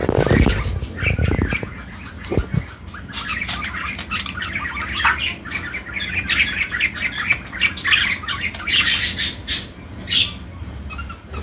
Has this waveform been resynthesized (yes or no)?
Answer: no